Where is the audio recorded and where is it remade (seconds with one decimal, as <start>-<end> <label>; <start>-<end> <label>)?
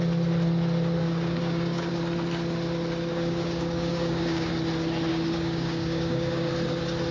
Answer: 0.0-1.0 recorded; 1.0-1.9 remade; 1.9-3.1 recorded; 3.1-4.5 remade; 4.5-5.1 recorded; 5.1-6.5 remade; 6.5-7.1 recorded